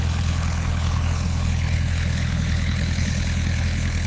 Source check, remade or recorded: remade